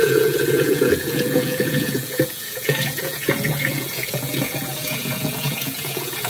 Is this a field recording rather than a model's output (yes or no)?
no